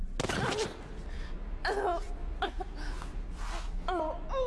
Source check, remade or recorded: recorded